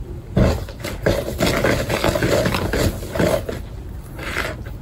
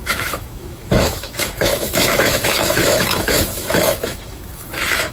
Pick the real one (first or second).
first